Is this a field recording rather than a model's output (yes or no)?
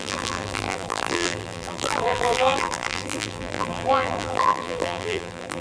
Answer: no